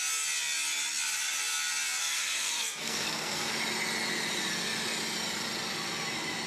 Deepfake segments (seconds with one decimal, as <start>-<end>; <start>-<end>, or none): 2.0-3.5